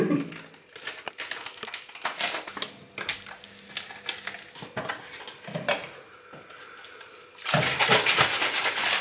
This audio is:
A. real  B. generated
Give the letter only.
A